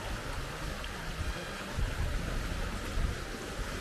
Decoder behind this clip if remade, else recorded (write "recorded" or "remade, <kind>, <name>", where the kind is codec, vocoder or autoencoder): recorded